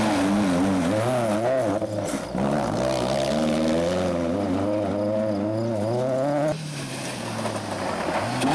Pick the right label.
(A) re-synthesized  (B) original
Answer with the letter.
B